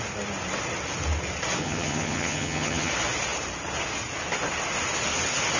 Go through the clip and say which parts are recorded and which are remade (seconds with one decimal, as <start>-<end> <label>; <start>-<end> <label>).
0.0-1.6 recorded; 1.6-2.9 remade; 2.9-5.6 recorded